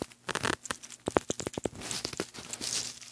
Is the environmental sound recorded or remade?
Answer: recorded